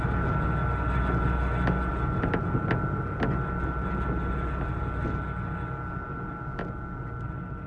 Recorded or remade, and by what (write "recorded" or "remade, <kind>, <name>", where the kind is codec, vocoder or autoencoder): recorded